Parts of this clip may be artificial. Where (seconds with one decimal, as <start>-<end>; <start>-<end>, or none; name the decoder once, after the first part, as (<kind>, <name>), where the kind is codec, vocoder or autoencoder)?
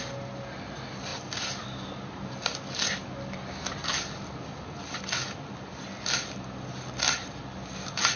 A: 0.0-1.1 (vocoder, BigVGAN v2); 6.0-8.2